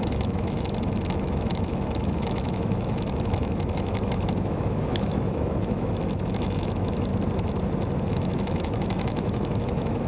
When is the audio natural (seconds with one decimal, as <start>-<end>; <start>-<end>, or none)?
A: 7.1-8.1